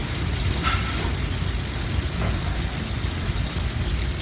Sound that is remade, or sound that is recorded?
recorded